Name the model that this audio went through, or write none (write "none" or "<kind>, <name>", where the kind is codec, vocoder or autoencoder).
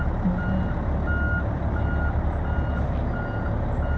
none